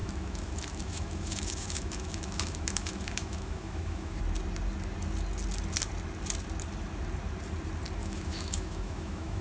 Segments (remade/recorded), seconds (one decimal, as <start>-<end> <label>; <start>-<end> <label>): 0.0-4.2 remade; 4.2-8.0 recorded; 8.0-9.4 remade